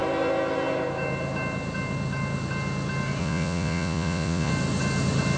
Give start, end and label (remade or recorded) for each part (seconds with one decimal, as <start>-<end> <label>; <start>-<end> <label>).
0.0-3.2 recorded; 3.2-4.5 remade; 4.5-5.4 recorded